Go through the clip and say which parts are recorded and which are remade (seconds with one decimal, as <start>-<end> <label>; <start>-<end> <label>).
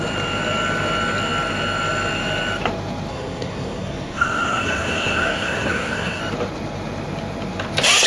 0.0-3.1 recorded; 3.1-6.2 remade; 6.2-8.1 recorded